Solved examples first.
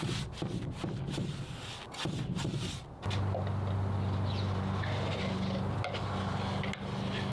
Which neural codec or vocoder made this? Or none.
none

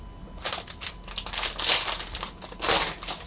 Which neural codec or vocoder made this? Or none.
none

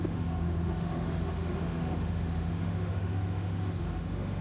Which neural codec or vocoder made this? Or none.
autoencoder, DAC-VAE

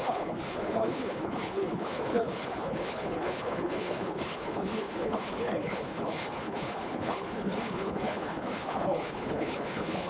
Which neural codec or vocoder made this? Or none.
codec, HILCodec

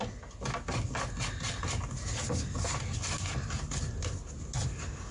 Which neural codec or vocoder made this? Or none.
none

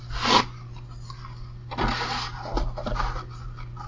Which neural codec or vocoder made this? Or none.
none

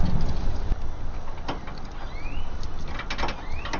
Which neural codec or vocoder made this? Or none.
none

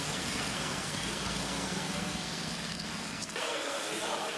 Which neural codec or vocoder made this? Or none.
codec, SNAC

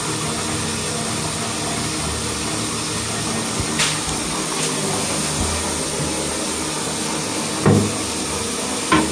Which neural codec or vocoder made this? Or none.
none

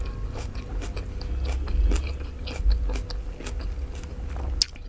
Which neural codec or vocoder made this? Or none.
none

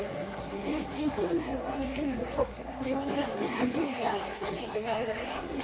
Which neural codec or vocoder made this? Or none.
codec, SNAC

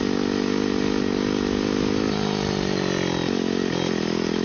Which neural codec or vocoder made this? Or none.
none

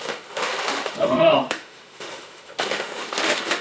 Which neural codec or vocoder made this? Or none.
autoencoder, DAC-VAE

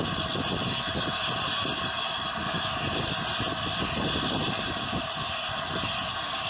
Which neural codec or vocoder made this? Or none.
none